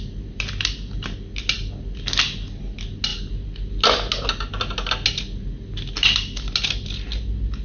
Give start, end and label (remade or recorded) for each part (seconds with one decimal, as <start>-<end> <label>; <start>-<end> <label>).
0.0-7.6 recorded

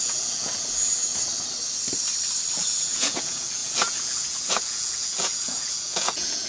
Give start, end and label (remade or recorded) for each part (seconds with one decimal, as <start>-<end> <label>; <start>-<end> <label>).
0.0-1.1 remade; 1.1-2.5 recorded; 2.5-6.5 remade